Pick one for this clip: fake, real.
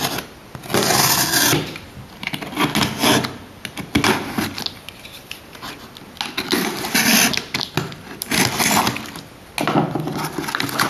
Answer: real